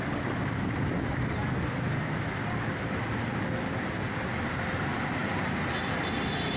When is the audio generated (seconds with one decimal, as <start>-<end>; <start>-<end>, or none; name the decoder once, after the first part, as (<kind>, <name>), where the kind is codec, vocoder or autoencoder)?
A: none